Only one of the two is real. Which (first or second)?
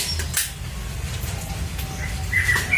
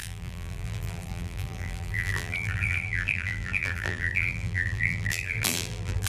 first